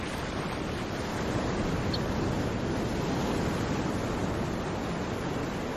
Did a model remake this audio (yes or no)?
no